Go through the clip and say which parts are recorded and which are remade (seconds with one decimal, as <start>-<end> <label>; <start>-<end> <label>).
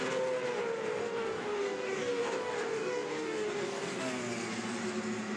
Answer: 0.0-1.0 recorded; 1.0-4.2 remade; 4.2-5.4 recorded